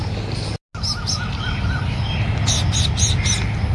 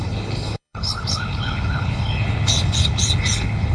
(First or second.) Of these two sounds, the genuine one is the first